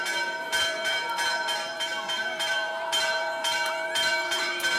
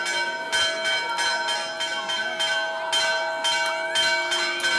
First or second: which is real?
second